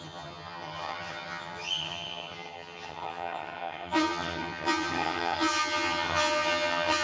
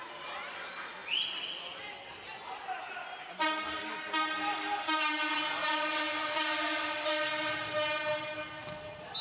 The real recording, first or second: second